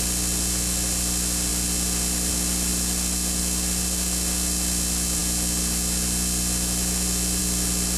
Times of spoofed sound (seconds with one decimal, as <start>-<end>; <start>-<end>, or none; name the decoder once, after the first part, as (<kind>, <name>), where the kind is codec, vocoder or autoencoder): none